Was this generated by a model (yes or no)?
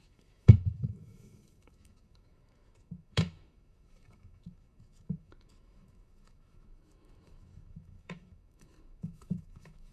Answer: yes